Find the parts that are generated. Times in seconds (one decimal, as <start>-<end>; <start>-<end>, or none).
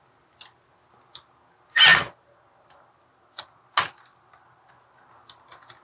none